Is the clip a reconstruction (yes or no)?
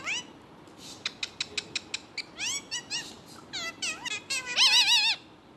no